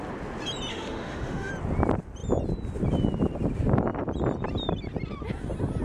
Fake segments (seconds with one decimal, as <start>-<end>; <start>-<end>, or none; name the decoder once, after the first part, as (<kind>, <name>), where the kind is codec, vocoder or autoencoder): 0.7-1.5 (autoencoder, DAC-VAE)